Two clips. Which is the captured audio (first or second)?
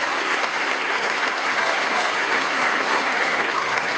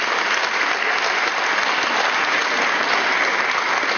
second